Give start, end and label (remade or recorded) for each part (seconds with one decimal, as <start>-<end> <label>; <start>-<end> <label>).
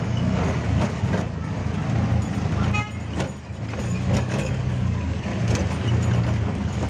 0.0-1.6 remade; 1.6-3.8 recorded; 3.8-5.3 remade; 5.3-6.2 recorded; 6.2-6.9 remade